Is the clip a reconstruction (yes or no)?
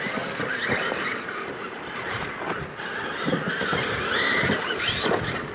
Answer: no